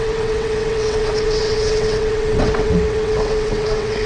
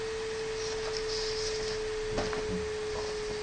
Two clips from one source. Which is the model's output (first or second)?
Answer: first